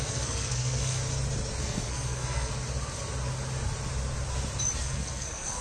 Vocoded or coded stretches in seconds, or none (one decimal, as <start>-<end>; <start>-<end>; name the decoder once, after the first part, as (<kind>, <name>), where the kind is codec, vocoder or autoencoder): 0.0-1.0 (codec, SNAC); 1.6-2.5; 4.8-5.6